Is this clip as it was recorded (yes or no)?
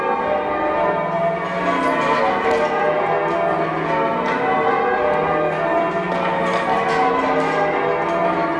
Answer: yes